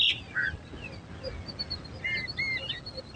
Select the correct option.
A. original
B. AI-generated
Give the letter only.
A